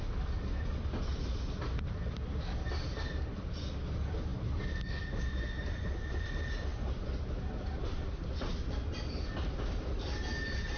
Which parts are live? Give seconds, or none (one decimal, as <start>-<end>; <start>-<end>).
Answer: 0.0-10.8